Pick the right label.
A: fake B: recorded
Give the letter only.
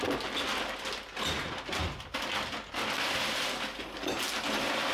B